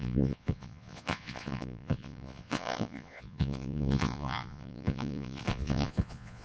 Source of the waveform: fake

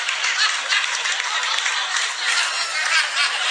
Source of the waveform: real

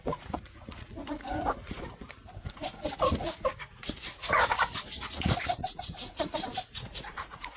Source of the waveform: fake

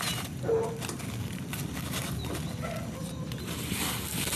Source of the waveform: real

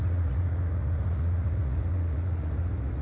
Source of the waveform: fake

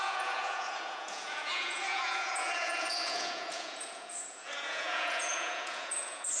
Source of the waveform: fake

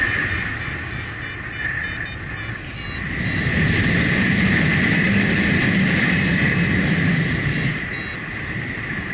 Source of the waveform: real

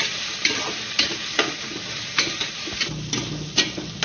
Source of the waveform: real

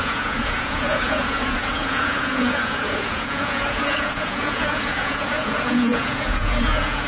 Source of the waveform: fake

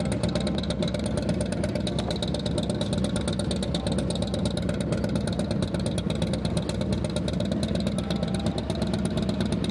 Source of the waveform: real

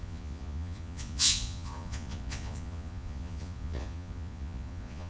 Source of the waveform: fake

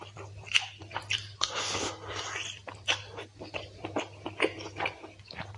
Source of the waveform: real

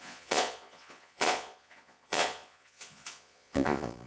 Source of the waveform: fake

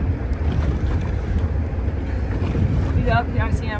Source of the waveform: real